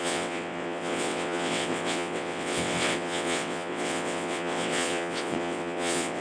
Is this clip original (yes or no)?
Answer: no